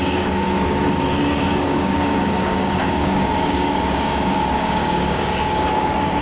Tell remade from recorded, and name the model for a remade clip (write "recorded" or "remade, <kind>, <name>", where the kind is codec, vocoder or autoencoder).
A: remade, codec, DAC